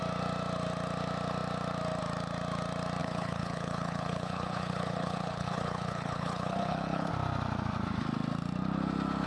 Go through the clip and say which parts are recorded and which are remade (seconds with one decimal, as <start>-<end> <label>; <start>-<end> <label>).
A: 0.0-3.0 recorded; 3.0-7.1 remade; 7.1-9.3 recorded